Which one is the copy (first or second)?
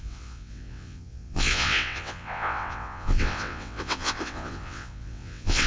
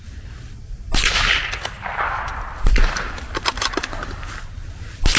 first